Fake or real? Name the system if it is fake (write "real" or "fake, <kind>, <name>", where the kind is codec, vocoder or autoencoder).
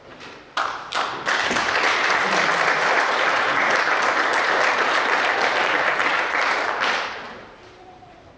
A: fake, vocoder, BigVGAN v2